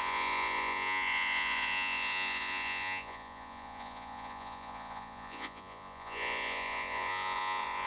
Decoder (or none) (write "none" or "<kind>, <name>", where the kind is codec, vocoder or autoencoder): vocoder, Vocos